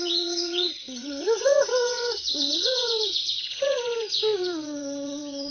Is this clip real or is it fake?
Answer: fake